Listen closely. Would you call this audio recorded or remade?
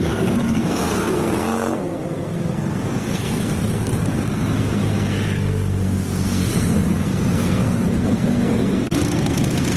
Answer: remade